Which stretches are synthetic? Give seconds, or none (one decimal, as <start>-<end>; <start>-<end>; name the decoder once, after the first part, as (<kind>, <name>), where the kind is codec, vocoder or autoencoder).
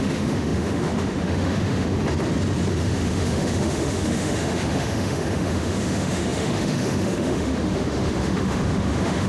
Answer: 0.0-2.0 (autoencoder, DAC-VAE); 2.7-9.3